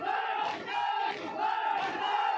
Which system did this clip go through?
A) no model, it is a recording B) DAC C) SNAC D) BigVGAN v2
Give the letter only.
A